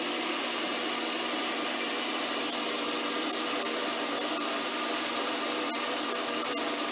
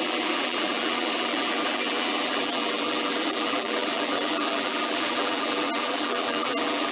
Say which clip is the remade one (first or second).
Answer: second